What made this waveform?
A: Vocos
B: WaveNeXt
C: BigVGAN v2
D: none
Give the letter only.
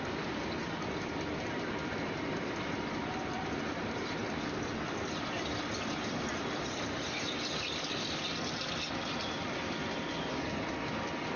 C